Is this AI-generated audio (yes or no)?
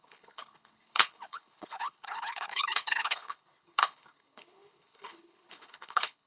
yes